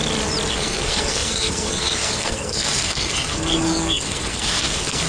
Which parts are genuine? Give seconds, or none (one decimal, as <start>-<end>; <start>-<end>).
0.0-0.5